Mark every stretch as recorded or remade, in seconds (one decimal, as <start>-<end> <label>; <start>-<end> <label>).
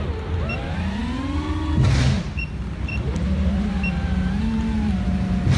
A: 0.0-5.6 recorded